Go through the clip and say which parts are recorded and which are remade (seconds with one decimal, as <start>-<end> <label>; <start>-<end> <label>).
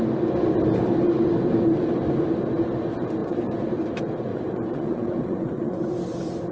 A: 0.0-3.2 recorded; 3.2-3.7 remade; 3.7-4.3 recorded; 4.3-5.8 remade; 5.8-6.5 recorded